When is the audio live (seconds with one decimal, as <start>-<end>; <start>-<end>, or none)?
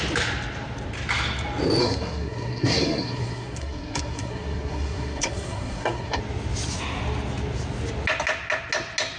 0.0-1.8; 6.2-9.2